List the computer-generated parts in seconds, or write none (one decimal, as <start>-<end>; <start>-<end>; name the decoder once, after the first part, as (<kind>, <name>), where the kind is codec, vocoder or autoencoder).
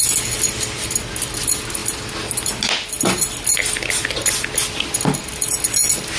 none